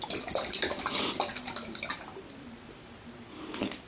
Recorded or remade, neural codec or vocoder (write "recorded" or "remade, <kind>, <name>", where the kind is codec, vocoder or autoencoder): recorded